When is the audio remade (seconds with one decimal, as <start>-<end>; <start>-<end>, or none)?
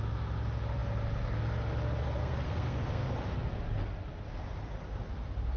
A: 2.2-3.0